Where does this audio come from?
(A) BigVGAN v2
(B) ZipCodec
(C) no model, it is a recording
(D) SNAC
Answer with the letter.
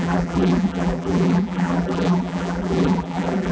A